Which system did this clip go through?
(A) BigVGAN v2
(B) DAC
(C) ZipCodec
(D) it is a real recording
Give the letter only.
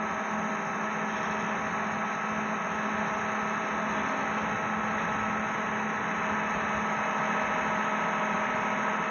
D